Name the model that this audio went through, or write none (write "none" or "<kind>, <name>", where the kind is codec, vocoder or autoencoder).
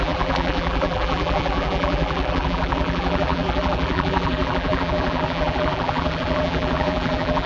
vocoder, BigVGAN v2